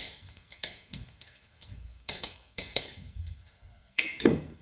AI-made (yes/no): yes